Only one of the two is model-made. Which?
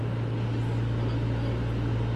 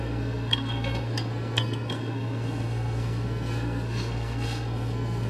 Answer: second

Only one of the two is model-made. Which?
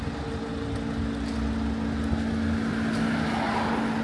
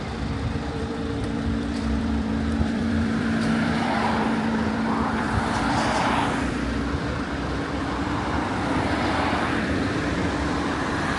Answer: second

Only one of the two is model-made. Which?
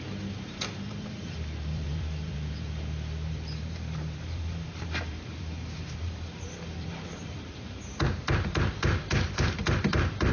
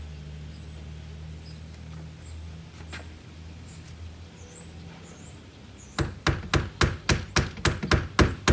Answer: first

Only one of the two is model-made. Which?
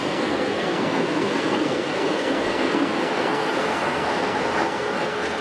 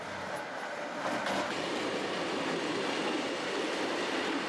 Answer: first